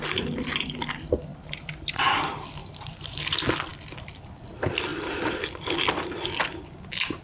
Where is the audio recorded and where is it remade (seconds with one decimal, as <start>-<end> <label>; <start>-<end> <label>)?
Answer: 0.0-1.3 recorded; 1.3-1.9 remade; 1.9-2.6 recorded; 2.6-3.3 remade; 3.3-7.2 recorded